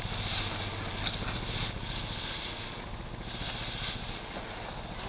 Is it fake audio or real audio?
real